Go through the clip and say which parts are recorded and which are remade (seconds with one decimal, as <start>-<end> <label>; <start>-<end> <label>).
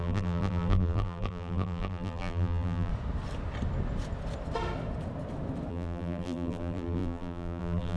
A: 0.0-2.9 remade; 2.9-5.7 recorded; 5.7-8.0 remade